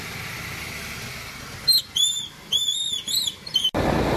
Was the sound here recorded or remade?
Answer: recorded